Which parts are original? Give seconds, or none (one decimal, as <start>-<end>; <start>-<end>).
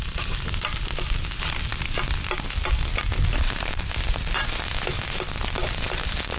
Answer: 0.0-6.4